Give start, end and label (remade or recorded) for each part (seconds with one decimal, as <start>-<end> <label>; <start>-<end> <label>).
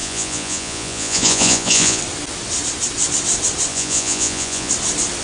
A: 0.0-2.0 remade; 2.0-3.7 recorded; 3.7-4.7 remade; 4.7-5.2 recorded